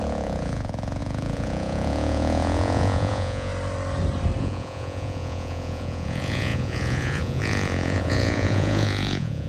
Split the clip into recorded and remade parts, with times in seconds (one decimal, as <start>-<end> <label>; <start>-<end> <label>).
0.0-3.5 remade; 3.5-4.4 recorded; 4.4-9.5 remade

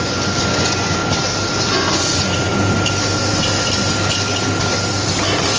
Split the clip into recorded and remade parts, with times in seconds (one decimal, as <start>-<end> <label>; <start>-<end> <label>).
0.0-1.0 remade; 1.0-1.7 recorded; 1.7-2.5 remade; 2.5-5.6 recorded

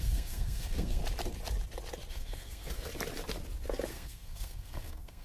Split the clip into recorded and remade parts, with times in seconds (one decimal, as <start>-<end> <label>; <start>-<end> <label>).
0.0-1.0 remade; 1.0-2.1 recorded; 2.1-2.9 remade; 2.9-3.9 recorded; 3.9-5.2 remade

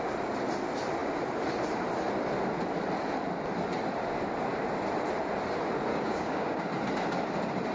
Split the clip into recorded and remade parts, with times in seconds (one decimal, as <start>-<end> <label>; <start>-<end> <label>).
0.0-5.9 recorded; 5.9-6.6 remade; 6.6-7.7 recorded

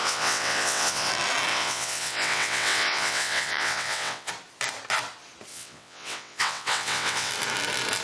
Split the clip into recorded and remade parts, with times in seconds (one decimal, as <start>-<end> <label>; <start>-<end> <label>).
0.0-1.1 remade; 1.1-1.5 recorded; 1.5-4.3 remade; 4.3-5.5 recorded; 5.5-7.3 remade; 7.3-8.0 recorded

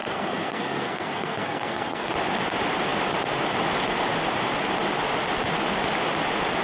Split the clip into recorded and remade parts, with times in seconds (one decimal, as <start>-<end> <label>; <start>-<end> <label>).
0.0-2.1 remade; 2.1-6.6 recorded

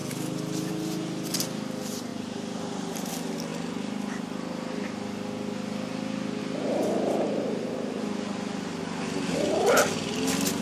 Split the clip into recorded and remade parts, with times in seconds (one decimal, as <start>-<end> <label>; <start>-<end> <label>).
0.0-10.6 recorded